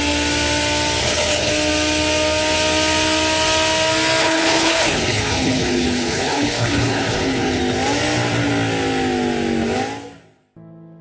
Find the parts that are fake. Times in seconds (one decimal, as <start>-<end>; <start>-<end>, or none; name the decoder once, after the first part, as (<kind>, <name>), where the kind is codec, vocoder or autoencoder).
1.0-1.5 (codec, HILCodec); 4.2-7.6